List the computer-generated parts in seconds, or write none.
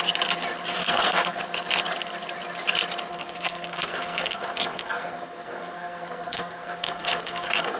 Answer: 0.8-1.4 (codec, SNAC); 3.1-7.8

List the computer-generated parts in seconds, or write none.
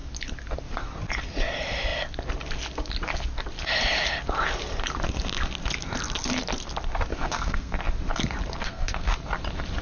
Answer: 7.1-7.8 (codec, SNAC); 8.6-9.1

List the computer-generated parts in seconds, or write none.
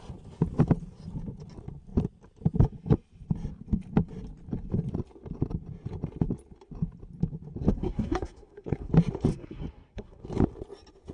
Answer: 7.7-8.9 (codec, SNAC); 9.3-10.2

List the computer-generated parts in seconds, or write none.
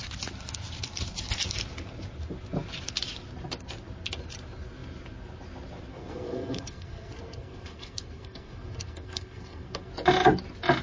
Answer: 5.9-9.9 (codec, SNAC)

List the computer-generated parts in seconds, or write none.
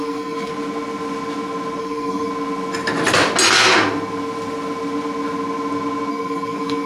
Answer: 0.0-0.5 (codec, SNAC); 1.8-2.3; 6.1-6.9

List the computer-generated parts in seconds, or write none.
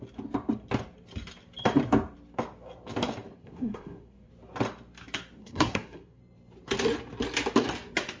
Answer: 3.4-4.3 (codec, SNAC); 5.4-6.2